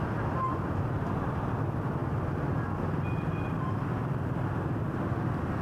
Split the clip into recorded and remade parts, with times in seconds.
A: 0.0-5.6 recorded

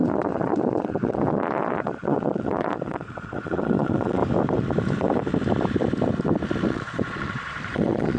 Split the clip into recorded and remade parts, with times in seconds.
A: 0.0-4.2 remade; 4.2-6.7 recorded; 6.7-8.2 remade

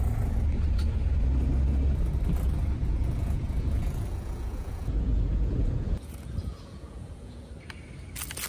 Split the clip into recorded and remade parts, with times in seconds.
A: 0.0-2.8 recorded; 2.8-7.5 remade; 7.5-8.5 recorded

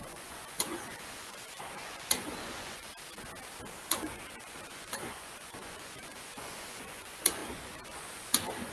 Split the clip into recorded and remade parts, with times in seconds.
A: 0.0-2.9 remade; 2.9-3.8 recorded; 3.8-8.7 remade